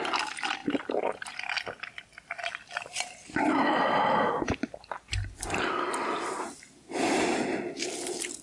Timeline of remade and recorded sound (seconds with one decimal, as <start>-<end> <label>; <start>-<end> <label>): 0.0-8.4 recorded